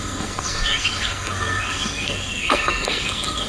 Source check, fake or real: fake